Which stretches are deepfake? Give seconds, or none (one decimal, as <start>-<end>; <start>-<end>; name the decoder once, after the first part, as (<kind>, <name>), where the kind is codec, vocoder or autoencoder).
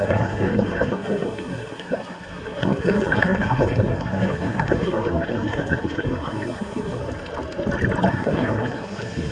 0.0-7.0 (codec, SNAC); 8.1-9.3